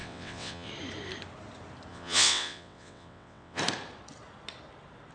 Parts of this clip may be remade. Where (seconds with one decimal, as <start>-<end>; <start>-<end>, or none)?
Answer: 0.0-0.7; 1.9-3.6